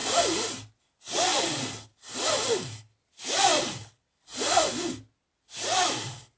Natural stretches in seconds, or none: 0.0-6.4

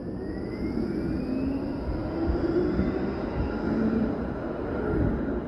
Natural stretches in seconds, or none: 0.0-5.5

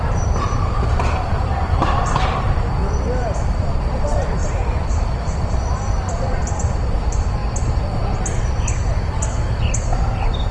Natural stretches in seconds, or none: 7.4-9.0

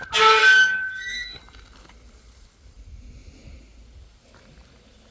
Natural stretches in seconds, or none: 0.0-0.4; 1.4-5.1